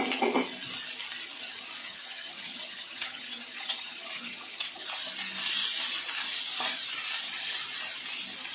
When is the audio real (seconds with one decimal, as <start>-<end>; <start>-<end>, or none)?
0.0-1.8; 4.9-8.5